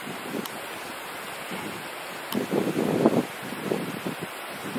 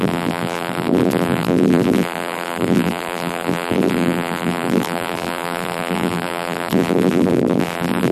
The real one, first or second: first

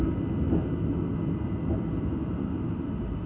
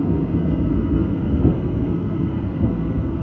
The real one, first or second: first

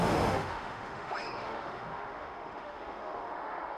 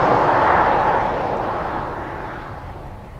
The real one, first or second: second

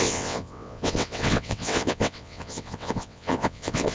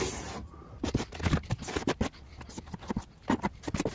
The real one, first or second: second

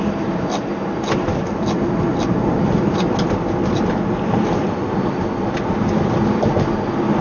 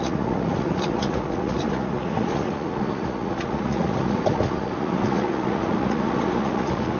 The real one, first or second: first